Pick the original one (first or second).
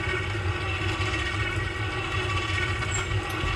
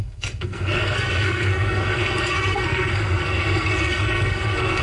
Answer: first